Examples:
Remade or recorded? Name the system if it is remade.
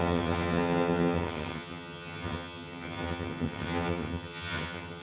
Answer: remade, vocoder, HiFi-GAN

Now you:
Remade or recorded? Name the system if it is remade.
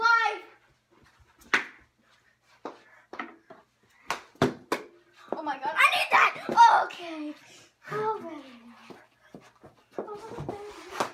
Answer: recorded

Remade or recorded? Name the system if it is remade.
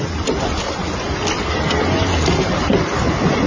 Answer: recorded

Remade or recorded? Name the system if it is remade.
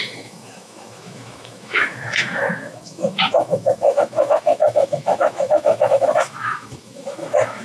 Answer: remade, autoencoder, DAC-VAE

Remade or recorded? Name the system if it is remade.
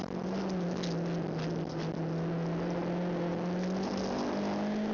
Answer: recorded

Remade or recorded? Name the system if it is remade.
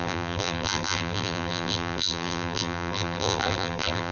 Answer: remade, vocoder, BigVGAN v2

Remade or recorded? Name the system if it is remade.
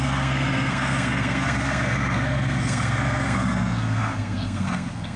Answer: remade, codec, SNAC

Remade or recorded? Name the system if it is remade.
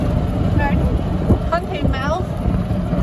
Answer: recorded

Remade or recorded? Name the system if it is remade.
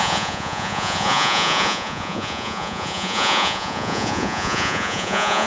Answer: remade, vocoder, Vocos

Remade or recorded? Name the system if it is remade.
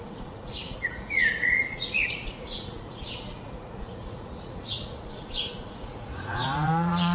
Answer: remade, vocoder, Vocos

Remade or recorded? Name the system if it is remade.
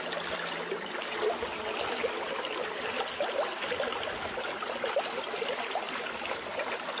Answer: recorded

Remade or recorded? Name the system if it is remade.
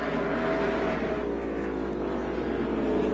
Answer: recorded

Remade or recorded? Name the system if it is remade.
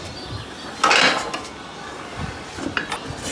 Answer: recorded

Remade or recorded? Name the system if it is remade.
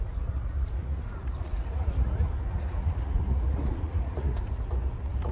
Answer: remade, vocoder, Vocos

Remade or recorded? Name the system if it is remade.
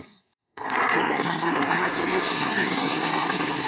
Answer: remade, codec, SNAC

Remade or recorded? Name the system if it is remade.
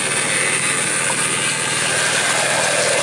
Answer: recorded